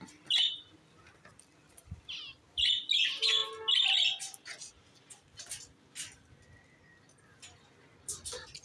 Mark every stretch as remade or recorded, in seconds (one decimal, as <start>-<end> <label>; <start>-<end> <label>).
0.0-1.3 recorded; 1.3-2.8 remade; 2.8-8.6 recorded